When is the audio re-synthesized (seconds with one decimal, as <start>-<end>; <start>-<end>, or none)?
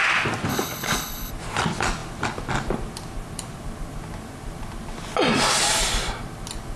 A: 0.5-1.3